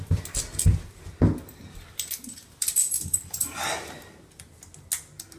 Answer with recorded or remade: recorded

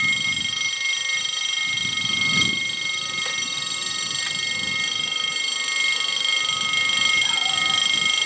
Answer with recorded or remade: recorded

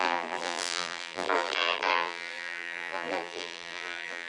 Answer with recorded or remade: remade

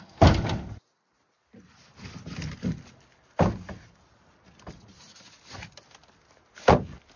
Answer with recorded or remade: recorded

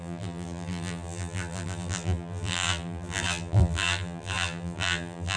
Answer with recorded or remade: remade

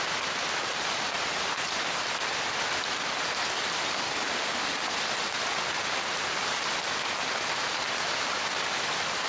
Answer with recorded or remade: recorded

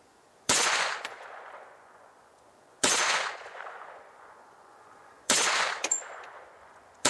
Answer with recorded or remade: remade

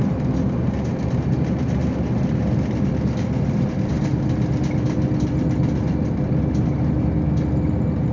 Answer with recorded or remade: recorded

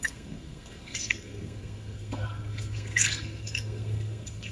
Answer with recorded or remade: remade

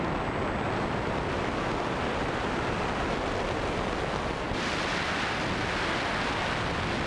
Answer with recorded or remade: recorded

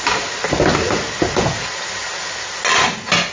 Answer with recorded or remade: recorded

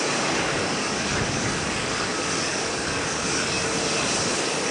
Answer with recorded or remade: remade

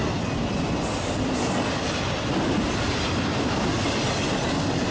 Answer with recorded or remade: recorded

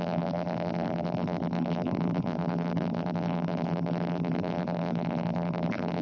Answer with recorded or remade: remade